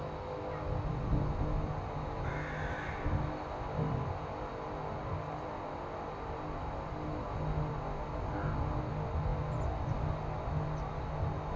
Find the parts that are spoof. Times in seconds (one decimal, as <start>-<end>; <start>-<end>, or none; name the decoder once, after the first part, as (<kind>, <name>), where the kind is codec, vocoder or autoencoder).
none